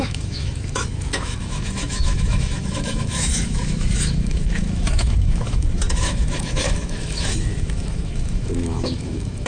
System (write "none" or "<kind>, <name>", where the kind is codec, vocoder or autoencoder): autoencoder, DAC-VAE